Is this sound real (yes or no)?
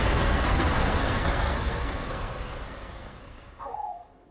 no